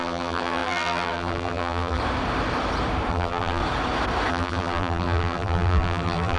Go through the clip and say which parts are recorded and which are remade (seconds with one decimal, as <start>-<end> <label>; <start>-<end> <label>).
0.0-2.0 remade; 2.0-3.1 recorded; 3.1-3.6 remade; 3.6-4.3 recorded; 4.3-6.4 remade